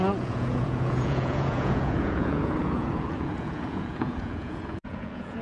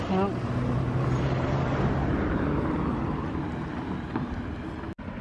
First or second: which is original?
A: second